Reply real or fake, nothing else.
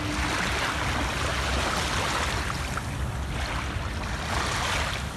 real